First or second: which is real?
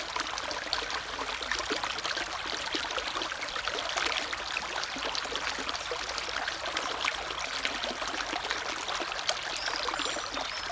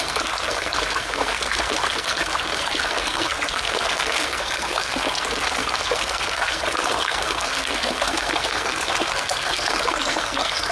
first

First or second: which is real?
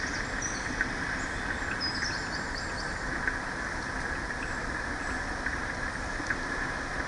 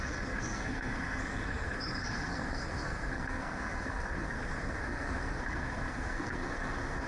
first